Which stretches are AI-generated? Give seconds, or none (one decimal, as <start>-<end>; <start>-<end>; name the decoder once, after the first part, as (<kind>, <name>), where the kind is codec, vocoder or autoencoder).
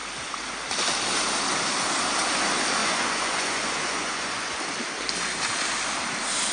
2.8-4.6 (vocoder, Vocos)